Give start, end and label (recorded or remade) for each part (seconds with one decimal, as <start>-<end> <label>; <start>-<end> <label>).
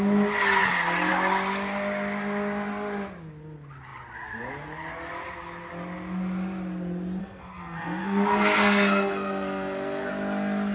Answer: 0.0-7.2 recorded; 7.2-10.1 remade; 10.1-10.7 recorded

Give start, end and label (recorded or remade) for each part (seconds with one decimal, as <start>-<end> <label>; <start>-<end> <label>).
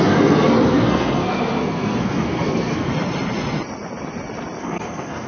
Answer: 0.0-2.9 remade; 2.9-4.6 recorded; 4.6-5.3 remade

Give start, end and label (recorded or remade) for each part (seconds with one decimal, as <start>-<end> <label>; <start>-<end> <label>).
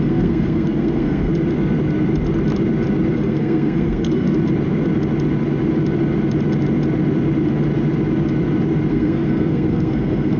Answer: 0.0-1.3 remade; 1.3-3.1 recorded; 3.1-4.4 remade; 4.4-8.9 recorded; 8.9-10.4 remade